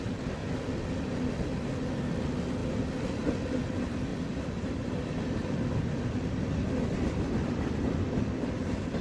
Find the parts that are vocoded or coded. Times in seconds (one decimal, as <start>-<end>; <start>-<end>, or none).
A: 0.4-1.9; 2.6-3.4; 4.1-9.0